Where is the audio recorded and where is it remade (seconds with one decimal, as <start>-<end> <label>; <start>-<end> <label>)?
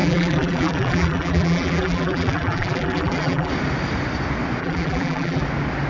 0.0-3.5 remade; 3.5-4.6 recorded; 4.6-5.4 remade; 5.4-5.9 recorded